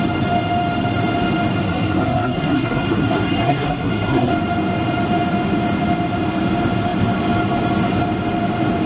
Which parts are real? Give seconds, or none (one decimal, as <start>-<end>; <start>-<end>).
0.0-1.6; 4.3-8.9